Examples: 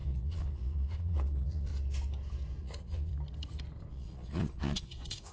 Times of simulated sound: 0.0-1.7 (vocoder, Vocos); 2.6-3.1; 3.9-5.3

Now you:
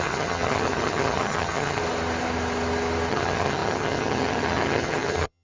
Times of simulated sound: 0.0-1.8 (vocoder, HiFi-GAN); 3.1-5.4

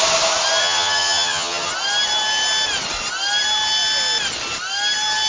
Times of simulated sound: 0.6-1.7 (vocoder, HiFi-GAN)

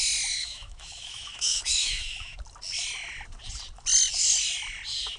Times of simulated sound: 0.4-2.4 (autoencoder, DAC-VAE)

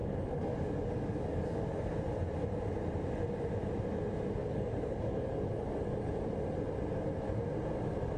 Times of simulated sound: 0.0-1.7 (codec, DAC); 4.4-5.8

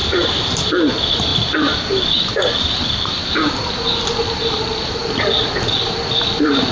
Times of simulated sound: 0.0-0.7 (vocoder, BigVGAN v2)